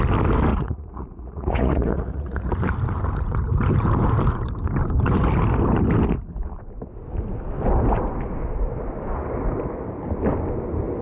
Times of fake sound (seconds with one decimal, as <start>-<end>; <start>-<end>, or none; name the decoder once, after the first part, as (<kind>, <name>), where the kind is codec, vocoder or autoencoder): 0.5-2.5 (vocoder, Vocos)